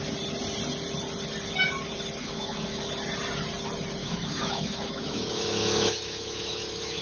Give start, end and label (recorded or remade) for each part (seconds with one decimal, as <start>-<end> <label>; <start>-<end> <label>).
0.0-2.2 recorded; 2.2-2.9 remade; 2.9-4.0 recorded; 4.0-7.0 remade